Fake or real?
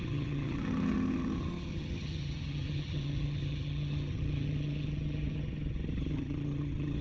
fake